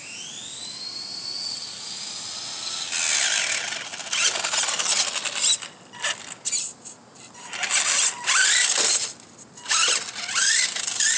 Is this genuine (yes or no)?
yes